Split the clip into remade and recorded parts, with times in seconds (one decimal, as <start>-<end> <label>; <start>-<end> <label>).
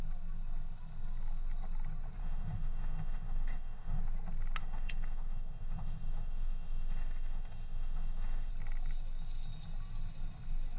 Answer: 0.0-2.2 recorded; 2.2-4.0 remade; 4.0-4.6 recorded; 4.6-8.5 remade; 8.5-10.8 recorded